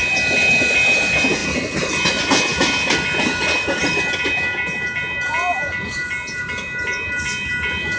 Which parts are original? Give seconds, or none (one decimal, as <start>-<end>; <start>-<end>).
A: 0.0-8.0